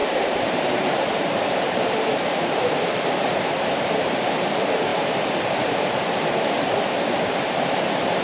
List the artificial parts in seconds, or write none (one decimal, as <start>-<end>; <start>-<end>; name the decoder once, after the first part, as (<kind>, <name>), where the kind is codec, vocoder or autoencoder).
0.0-4.1 (vocoder, BigVGAN v2); 4.9-7.7